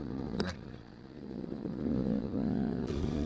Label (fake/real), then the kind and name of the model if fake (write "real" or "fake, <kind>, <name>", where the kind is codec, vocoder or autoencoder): fake, vocoder, Vocos